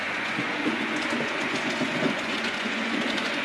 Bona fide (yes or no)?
no